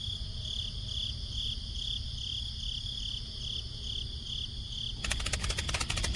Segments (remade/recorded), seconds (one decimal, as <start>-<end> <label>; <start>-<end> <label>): 0.0-6.2 recorded